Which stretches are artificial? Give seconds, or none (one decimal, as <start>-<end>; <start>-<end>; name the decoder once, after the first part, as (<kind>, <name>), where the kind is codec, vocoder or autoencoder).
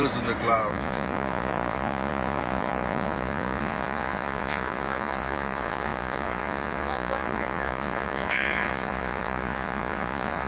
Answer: 0.7-10.5 (vocoder, Vocos)